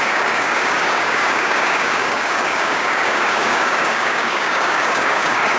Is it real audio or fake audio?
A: fake